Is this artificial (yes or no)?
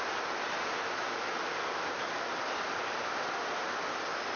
no